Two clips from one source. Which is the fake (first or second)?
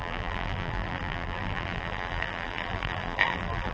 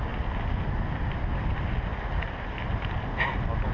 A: first